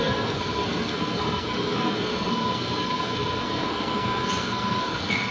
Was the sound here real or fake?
fake